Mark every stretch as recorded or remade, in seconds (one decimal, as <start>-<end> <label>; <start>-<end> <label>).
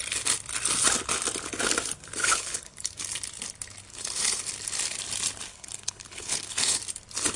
0.0-2.2 recorded; 2.2-2.9 remade; 2.9-3.9 recorded; 3.9-4.5 remade; 4.5-5.5 recorded; 5.5-6.8 remade; 6.8-7.4 recorded